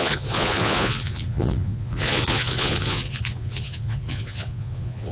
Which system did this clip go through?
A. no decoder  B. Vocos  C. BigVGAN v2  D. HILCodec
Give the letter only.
B